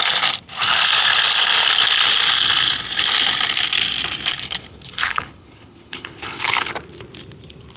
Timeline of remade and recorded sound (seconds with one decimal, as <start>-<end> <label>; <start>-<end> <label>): 0.0-4.3 recorded; 4.3-6.7 remade; 6.7-7.8 recorded